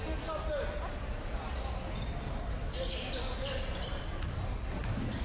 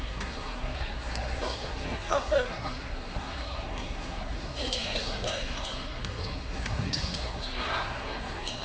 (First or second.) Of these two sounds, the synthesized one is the second